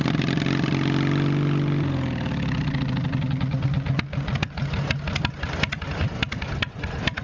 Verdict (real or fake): real